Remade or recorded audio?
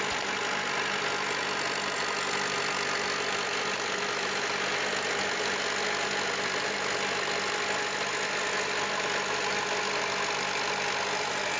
recorded